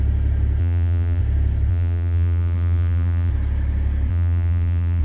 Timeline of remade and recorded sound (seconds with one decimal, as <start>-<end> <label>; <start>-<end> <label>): 0.0-0.6 recorded; 0.6-1.2 remade; 1.2-1.7 recorded; 1.7-3.3 remade; 3.3-4.1 recorded; 4.1-5.0 remade